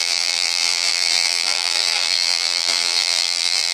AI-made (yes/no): yes